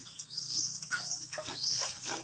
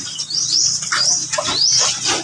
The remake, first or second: first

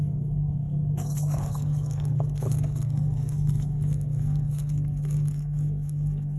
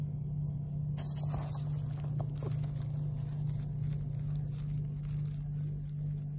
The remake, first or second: first